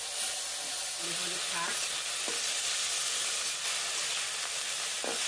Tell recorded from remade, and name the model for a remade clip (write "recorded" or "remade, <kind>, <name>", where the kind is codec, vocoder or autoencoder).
recorded